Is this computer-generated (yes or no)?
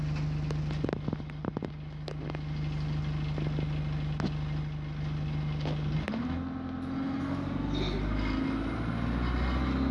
no